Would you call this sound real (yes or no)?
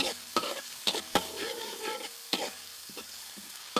no